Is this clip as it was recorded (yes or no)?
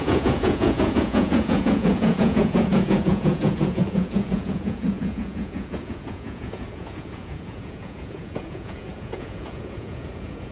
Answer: no